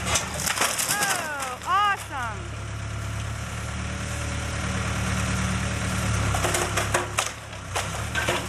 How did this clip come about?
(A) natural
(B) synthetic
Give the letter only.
A